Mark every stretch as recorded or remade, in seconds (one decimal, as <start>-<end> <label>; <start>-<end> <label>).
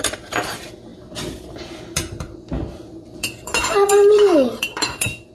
0.0-5.3 remade